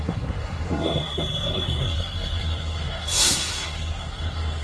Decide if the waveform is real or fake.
fake